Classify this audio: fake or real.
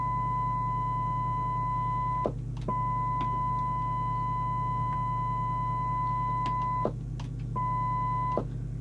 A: real